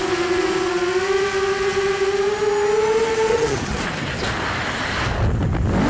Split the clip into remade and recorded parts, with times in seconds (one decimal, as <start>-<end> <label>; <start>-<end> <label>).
0.0-3.3 recorded; 3.3-3.8 remade; 3.8-5.9 recorded